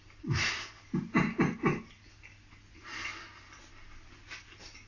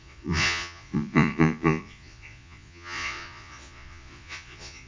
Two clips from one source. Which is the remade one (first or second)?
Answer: second